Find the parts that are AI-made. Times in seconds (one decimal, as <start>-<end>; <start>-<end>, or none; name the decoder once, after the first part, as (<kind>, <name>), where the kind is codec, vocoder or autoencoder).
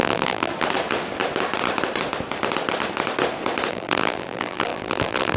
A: 0.0-0.5 (vocoder, BigVGAN v2); 3.7-5.4